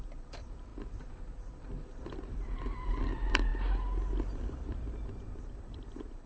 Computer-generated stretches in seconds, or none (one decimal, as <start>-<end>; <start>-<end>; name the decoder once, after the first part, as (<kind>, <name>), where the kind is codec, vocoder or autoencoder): 0.0-0.7 (vocoder, BigVGAN v2); 1.6-3.5; 5.4-6.3